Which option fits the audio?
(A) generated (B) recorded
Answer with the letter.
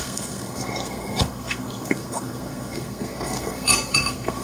A